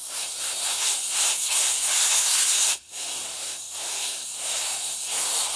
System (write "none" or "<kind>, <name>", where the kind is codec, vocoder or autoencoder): codec, SNAC